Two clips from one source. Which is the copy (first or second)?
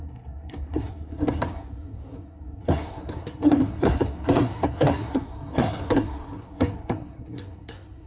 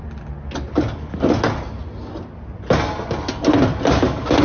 first